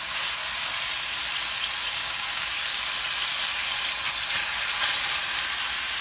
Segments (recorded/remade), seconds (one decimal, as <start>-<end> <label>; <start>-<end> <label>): 0.0-2.0 recorded; 2.0-2.8 remade; 2.8-6.0 recorded